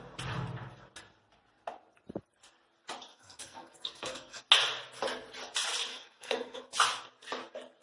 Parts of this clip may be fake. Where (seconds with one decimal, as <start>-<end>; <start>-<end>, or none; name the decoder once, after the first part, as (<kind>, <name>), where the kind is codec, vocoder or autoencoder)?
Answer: 3.1-4.4 (codec, SNAC); 5.9-6.6